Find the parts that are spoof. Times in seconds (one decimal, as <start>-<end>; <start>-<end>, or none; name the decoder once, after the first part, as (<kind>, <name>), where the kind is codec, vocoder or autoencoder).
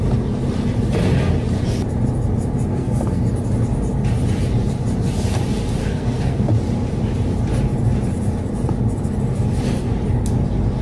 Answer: 2.7-3.2 (codec, SNAC); 5.8-6.5